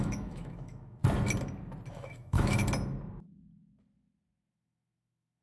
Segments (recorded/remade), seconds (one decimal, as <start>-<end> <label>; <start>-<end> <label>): 0.0-1.0 remade; 1.0-1.9 recorded; 1.9-2.6 remade; 2.6-4.5 recorded; 4.5-5.4 remade